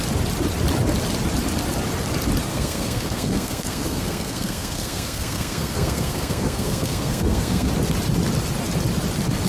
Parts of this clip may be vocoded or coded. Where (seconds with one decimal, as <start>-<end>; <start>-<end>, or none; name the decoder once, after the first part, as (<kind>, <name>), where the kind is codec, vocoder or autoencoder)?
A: 2.5-7.7 (codec, SNAC)